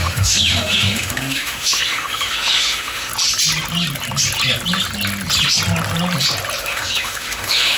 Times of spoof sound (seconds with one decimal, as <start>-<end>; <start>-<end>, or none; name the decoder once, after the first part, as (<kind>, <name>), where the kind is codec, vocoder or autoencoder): 0.0-3.1 (autoencoder, DAC-VAE); 6.6-7.8